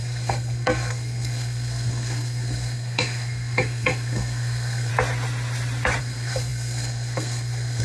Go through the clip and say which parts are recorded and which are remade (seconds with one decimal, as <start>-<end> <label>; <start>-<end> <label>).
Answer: 0.0-4.9 remade; 4.9-6.0 recorded; 6.0-7.8 remade

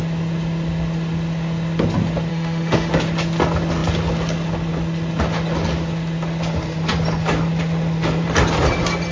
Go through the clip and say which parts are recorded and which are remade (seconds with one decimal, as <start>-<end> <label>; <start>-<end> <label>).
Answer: 0.0-2.3 recorded; 2.3-2.9 remade; 2.9-9.1 recorded

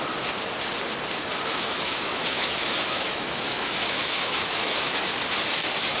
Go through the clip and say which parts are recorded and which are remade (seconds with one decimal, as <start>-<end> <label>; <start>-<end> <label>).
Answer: 0.0-1.5 recorded; 1.5-5.1 remade; 5.1-6.0 recorded

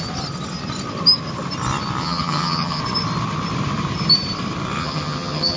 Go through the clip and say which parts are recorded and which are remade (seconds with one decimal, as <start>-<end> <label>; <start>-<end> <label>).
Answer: 0.0-2.0 recorded; 2.0-2.8 remade; 2.8-4.8 recorded; 4.8-5.6 remade

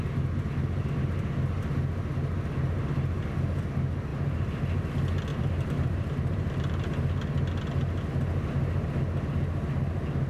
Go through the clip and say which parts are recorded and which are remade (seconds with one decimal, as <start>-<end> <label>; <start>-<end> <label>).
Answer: 0.0-4.1 recorded; 4.1-4.6 remade; 4.6-5.3 recorded; 5.3-7.1 remade; 7.1-10.3 recorded